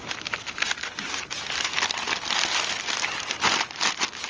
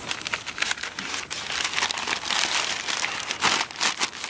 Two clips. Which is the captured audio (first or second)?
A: second